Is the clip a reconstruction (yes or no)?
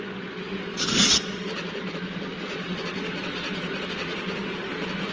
yes